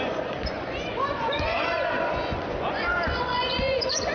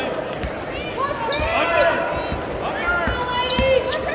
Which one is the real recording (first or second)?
second